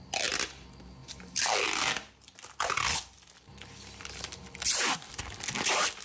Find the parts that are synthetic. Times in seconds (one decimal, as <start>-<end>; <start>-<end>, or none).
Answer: none

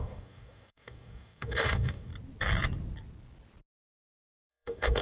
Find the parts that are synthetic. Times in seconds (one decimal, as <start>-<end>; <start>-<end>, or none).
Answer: 0.0-2.1; 4.5-5.0

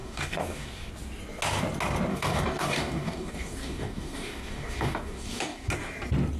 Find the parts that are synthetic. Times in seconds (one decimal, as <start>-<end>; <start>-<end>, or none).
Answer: 0.0-0.9; 2.1-5.7

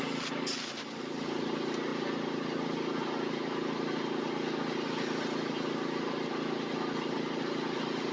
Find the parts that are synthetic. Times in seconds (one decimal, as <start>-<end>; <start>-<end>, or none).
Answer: none

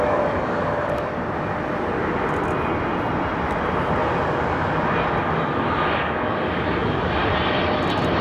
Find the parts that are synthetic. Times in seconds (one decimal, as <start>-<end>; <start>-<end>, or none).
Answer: 0.0-1.2; 5.2-7.2

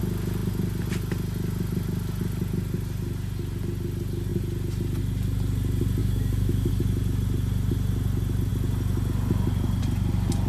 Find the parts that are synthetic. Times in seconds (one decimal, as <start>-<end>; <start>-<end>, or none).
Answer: 6.0-6.7

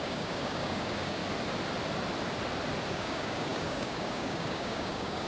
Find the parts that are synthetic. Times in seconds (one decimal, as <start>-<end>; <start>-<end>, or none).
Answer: 0.0-1.2; 2.9-5.3